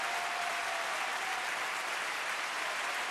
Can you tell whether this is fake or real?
real